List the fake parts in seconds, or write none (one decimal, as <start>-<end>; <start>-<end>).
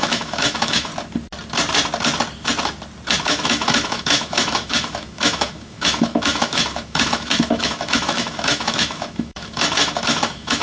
0.0-0.9; 3.2-10.6